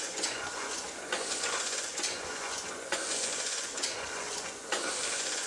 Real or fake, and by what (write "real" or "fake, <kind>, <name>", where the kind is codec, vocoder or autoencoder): fake, vocoder, Vocos